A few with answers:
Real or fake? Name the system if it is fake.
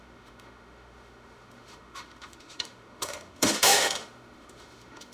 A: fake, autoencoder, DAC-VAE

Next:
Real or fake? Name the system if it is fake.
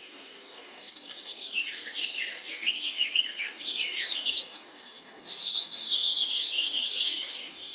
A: fake, codec, DAC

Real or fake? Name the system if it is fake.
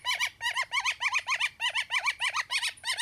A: fake, vocoder, BigVGAN v2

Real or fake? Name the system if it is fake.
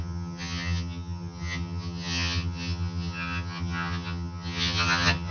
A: fake, vocoder, HiFi-GAN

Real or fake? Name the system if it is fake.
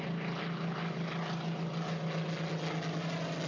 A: real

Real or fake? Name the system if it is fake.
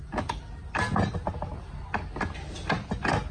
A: real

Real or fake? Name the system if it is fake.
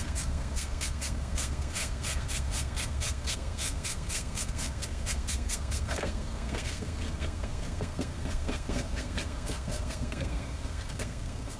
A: fake, codec, SNAC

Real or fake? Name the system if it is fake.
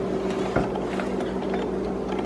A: real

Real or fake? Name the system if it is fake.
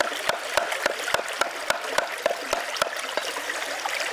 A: real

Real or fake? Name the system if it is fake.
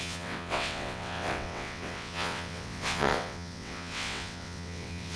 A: fake, vocoder, WaveNeXt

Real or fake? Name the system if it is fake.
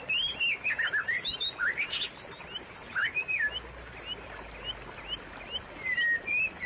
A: real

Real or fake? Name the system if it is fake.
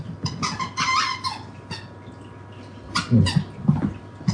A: real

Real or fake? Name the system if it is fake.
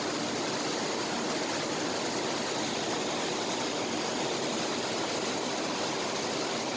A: real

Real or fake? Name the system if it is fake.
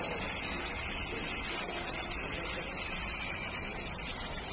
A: real